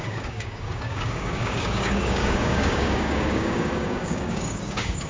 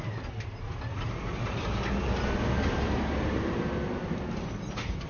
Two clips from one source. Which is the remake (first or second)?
first